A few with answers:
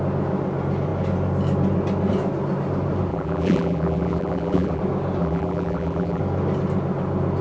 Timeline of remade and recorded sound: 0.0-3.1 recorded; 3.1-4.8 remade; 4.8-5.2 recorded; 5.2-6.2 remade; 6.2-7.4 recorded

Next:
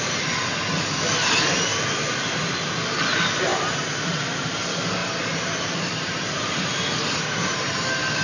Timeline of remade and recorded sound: 0.0-3.5 recorded; 3.5-4.6 remade; 4.6-5.0 recorded; 5.0-6.6 remade; 6.6-8.2 recorded

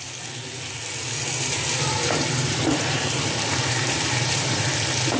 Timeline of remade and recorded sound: 0.0-1.5 recorded; 1.5-4.6 remade; 4.6-5.2 recorded

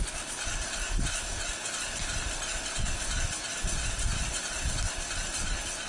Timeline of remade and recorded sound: 0.0-2.0 recorded; 2.0-2.9 remade; 2.9-5.9 recorded

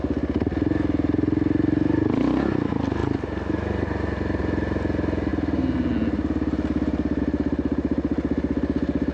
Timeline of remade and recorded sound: 0.0-3.0 recorded; 3.0-4.4 remade; 4.4-9.1 recorded

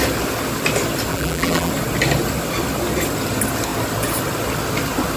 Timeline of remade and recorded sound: 0.0-1.1 recorded; 1.1-1.7 remade; 1.7-5.2 recorded